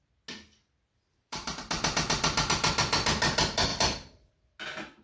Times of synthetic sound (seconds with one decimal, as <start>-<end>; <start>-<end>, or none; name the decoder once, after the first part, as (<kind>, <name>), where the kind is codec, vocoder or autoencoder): 1.1-1.7 (vocoder, BigVGAN v2); 3.7-4.6